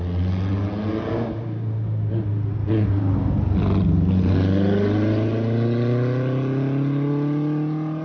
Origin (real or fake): real